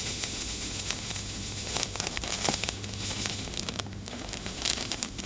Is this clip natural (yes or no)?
no